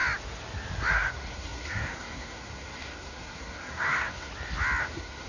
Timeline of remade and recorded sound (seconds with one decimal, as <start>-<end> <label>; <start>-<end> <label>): 0.0-0.9 recorded; 0.9-4.3 remade; 4.3-4.8 recorded; 4.8-5.3 remade